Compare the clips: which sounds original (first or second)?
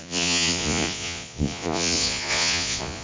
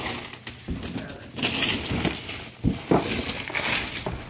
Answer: second